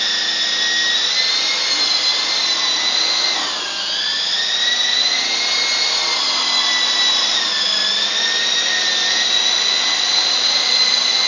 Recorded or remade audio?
recorded